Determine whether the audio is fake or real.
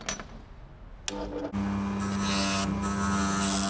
real